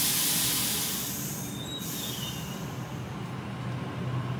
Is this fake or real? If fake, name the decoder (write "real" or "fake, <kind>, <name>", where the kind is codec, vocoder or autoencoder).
real